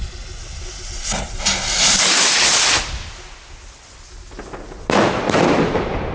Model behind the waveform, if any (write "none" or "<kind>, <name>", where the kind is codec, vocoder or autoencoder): none